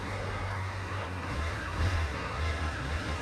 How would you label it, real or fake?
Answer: fake